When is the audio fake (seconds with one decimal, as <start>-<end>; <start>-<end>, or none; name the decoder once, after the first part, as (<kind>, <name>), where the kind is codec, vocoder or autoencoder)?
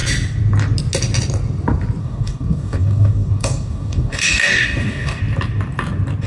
2.0-5.2 (codec, DAC)